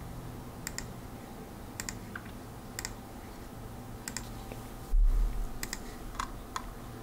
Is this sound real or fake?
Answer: real